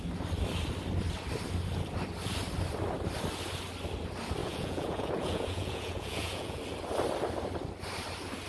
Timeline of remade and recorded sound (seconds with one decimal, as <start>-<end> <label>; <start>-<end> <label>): 0.0-4.4 recorded; 4.4-6.6 remade; 6.6-8.5 recorded

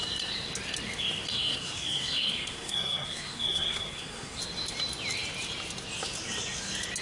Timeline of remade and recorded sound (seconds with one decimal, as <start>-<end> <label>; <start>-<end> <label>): 0.0-1.3 recorded; 1.3-4.4 remade; 4.4-7.0 recorded

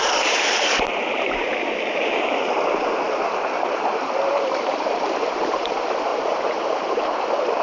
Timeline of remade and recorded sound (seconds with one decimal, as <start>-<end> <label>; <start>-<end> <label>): 0.0-7.6 remade

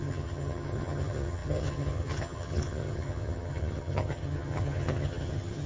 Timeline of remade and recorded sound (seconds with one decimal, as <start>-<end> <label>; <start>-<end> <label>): 0.0-5.7 remade

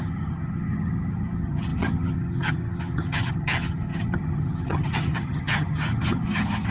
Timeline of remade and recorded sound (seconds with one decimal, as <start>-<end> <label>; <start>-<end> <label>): 0.0-6.7 remade